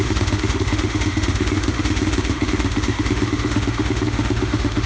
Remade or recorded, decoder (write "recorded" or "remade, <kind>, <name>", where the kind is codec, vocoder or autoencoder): remade, autoencoder, DAC-VAE